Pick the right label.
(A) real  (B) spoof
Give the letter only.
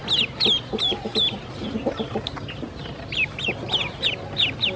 A